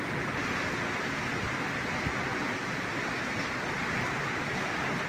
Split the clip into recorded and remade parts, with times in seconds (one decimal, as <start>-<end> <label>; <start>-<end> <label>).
0.0-2.3 recorded; 2.3-3.1 remade; 3.1-5.1 recorded